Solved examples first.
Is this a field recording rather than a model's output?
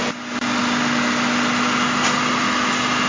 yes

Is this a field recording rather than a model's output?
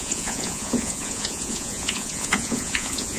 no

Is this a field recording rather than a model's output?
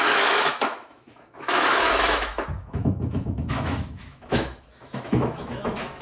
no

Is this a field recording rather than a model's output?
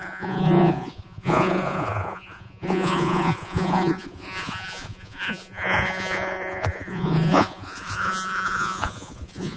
no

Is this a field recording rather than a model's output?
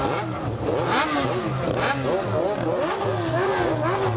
yes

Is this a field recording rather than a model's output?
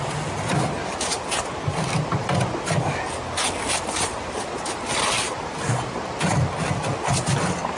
yes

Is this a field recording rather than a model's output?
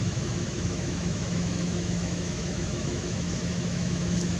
no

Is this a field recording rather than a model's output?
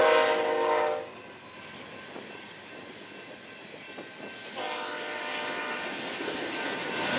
yes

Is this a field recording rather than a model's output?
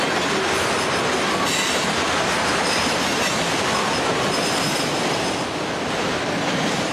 yes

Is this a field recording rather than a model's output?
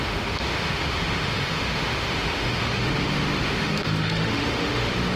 no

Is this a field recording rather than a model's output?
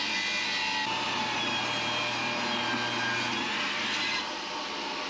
yes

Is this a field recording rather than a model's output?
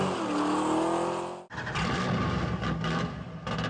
yes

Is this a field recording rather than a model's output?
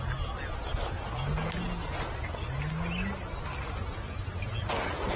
yes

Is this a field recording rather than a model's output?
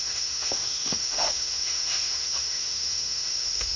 no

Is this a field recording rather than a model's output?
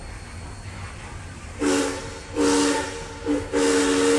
yes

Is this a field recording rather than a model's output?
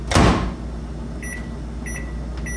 yes